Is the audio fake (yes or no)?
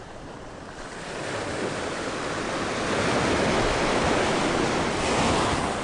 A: no